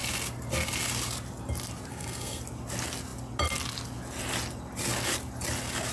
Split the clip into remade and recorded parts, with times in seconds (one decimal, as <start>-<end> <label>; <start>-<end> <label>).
0.0-1.9 recorded; 1.9-2.4 remade; 2.4-5.9 recorded